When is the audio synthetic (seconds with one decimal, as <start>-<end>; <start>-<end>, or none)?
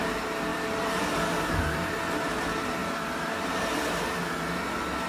0.5-1.6; 2.8-4.3